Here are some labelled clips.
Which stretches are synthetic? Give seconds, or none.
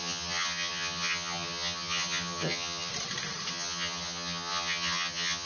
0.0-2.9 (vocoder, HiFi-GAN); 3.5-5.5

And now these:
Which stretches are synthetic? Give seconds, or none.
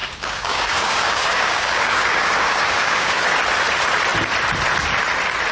0.0-3.3 (codec, DAC)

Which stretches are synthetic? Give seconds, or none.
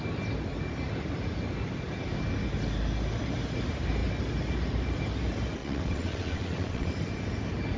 5.6-6.9 (vocoder, WaveNeXt)